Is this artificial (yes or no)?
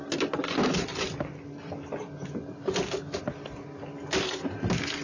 no